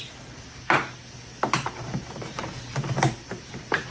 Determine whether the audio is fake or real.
fake